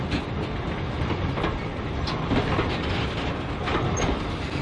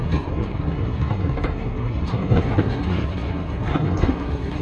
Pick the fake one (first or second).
second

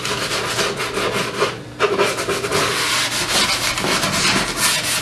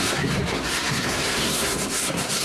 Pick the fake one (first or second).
second